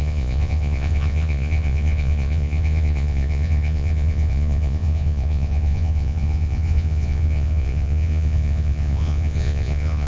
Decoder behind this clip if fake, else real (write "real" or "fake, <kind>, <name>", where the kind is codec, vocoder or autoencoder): fake, vocoder, Vocos